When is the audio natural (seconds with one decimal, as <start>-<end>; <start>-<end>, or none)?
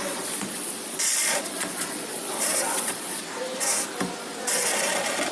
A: 3.2-5.3